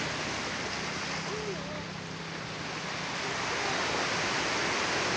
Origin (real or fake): real